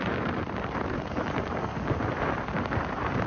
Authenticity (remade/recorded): remade